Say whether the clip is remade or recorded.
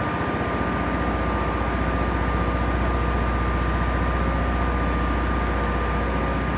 recorded